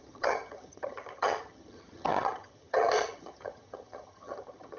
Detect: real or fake fake